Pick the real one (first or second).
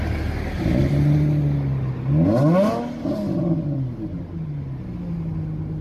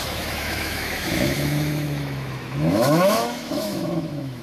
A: first